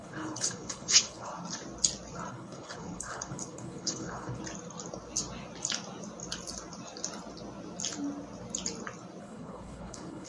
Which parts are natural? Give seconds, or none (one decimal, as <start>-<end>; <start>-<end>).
1.3-2.3; 4.4-9.2